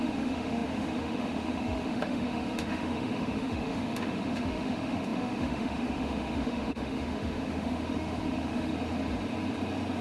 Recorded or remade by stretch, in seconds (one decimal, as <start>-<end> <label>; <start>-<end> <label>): 0.0-8.7 remade; 8.7-10.0 recorded